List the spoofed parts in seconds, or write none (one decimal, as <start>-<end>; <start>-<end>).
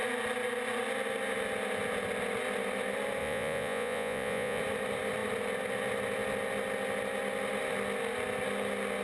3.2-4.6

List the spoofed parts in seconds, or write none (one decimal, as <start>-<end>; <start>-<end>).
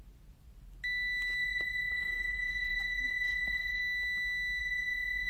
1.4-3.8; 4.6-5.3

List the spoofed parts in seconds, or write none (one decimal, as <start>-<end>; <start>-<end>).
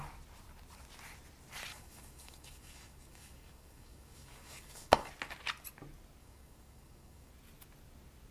1.7-5.1; 6.2-7.3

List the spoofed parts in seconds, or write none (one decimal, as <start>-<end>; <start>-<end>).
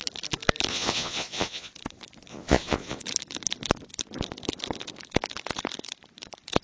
0.7-1.7; 2.3-3.0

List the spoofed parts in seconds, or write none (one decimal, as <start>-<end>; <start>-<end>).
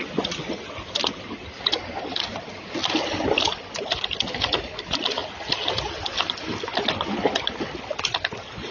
none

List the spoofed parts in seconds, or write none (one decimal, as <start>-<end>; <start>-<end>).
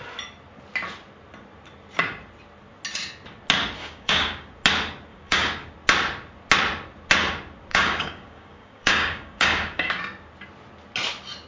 3.8-4.5; 5.1-5.7; 7.7-10.0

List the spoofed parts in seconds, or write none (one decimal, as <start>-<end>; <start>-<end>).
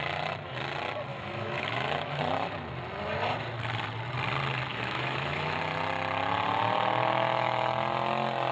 1.1-2.2; 4.7-5.6; 7.1-7.7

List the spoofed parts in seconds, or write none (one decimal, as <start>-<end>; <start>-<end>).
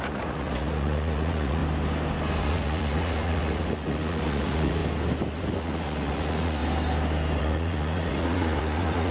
0.0-1.6; 2.4-4.8; 5.4-6.6; 7.4-9.1